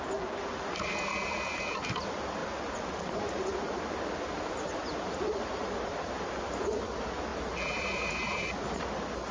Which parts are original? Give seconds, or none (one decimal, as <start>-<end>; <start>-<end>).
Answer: 0.0-9.3